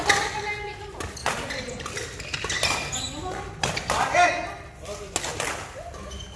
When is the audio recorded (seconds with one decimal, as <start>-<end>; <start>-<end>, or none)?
0.0-6.4